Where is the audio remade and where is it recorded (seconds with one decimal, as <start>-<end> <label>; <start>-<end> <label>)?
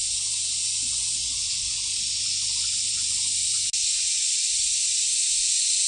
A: 0.0-2.0 remade; 2.0-5.2 recorded; 5.2-5.9 remade